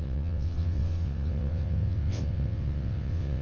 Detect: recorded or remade remade